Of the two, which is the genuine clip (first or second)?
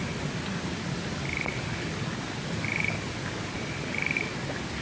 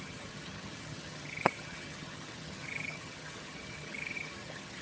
first